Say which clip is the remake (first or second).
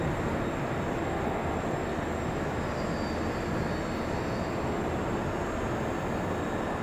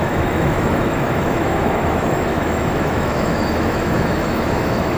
second